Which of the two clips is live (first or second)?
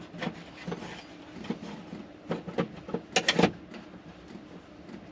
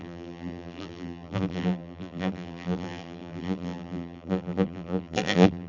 first